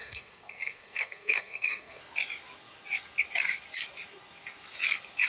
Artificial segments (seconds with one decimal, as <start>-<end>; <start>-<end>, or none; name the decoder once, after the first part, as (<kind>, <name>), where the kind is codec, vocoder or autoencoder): 0.0-2.0 (codec, SNAC)